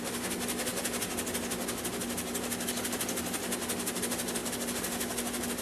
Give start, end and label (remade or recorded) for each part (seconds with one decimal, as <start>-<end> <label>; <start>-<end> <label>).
0.0-5.6 recorded

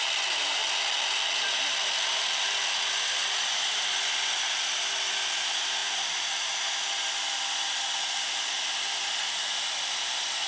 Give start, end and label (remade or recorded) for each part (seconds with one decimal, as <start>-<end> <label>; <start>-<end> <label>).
0.0-10.5 recorded

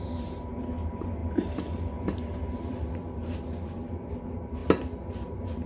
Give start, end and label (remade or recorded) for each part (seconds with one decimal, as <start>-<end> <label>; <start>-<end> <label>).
0.0-4.6 remade; 4.6-5.2 recorded; 5.2-5.7 remade

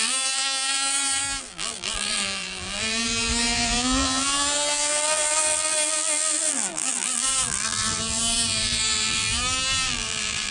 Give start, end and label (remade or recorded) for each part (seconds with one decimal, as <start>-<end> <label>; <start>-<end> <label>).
0.0-10.5 remade